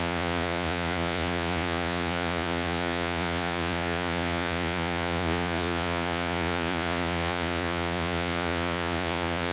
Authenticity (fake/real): fake